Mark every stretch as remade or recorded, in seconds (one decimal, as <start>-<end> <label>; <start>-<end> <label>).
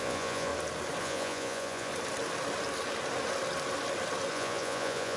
0.0-0.5 remade; 0.5-1.0 recorded; 1.0-1.9 remade; 1.9-4.3 recorded; 4.3-5.2 remade